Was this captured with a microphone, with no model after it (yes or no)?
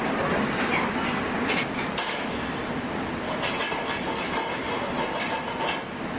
yes